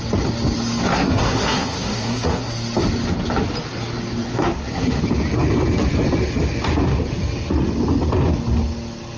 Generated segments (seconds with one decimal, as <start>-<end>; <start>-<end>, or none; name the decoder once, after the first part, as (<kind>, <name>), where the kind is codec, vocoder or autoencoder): 0.9-2.5 (codec, SNAC); 4.3-5.0